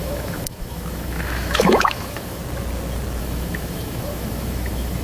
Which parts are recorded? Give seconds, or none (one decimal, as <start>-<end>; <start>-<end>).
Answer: 2.4-3.2